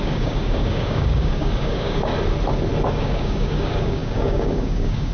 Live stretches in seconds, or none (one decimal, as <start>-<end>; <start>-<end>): 2.1-3.0